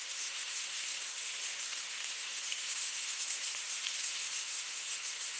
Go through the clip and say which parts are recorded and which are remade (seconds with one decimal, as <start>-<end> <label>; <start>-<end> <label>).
0.0-5.4 remade